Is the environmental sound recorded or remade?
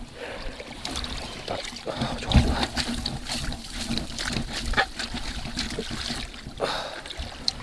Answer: recorded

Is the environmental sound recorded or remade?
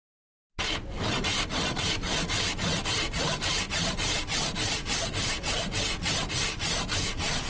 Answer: recorded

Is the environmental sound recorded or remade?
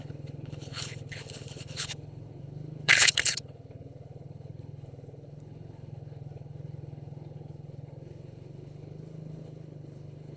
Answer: remade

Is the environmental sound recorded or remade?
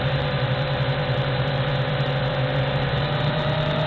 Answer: remade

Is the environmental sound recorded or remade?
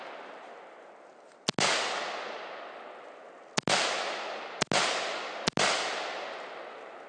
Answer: recorded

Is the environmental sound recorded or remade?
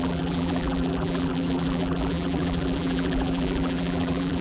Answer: remade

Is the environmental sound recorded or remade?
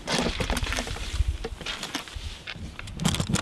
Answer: recorded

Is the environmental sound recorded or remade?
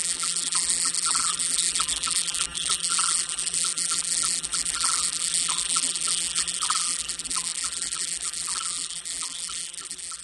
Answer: remade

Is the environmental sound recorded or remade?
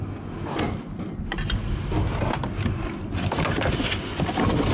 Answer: recorded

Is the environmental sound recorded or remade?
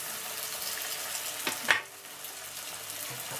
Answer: recorded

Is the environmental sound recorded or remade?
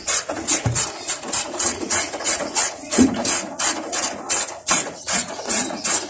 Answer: remade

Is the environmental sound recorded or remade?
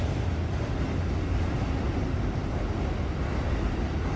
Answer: recorded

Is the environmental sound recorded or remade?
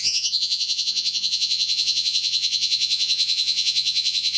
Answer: remade